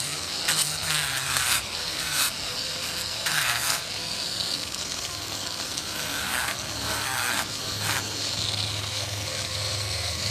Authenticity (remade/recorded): remade